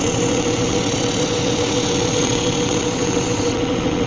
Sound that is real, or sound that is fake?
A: fake